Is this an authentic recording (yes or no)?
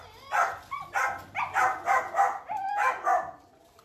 yes